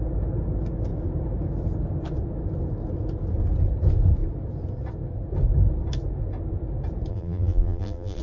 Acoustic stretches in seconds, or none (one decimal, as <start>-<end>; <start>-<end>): 0.0-7.1